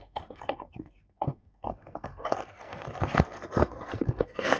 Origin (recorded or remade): remade